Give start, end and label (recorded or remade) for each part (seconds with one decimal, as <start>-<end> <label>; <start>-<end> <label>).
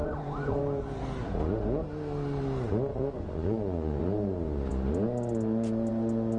0.0-0.6 remade; 0.6-2.9 recorded; 2.9-4.0 remade; 4.0-6.4 recorded